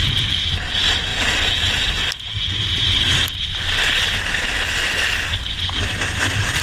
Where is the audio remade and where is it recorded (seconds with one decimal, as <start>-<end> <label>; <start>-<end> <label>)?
0.0-6.6 recorded